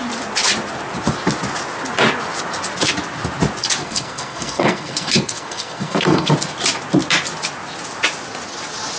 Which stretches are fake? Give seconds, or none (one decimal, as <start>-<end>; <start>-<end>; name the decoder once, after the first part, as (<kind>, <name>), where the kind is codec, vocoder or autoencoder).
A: 3.8-6.3 (codec, SNAC)